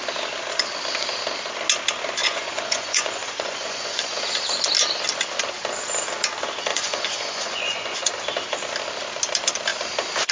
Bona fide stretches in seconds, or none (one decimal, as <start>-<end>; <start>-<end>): 0.0-2.2; 4.2-6.7; 8.1-10.3

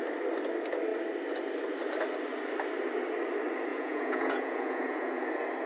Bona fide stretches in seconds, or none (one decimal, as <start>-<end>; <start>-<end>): 0.0-3.7; 5.2-5.7